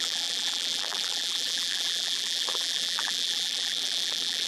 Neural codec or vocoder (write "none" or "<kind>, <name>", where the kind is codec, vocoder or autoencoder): vocoder, BigVGAN v2